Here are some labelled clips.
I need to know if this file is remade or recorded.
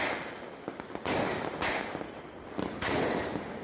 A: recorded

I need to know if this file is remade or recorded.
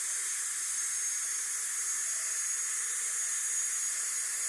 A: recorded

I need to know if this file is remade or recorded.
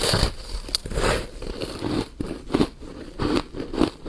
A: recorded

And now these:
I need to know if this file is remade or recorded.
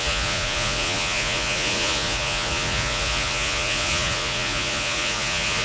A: remade